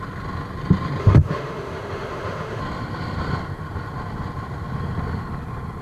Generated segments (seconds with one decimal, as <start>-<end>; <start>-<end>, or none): 1.0-2.6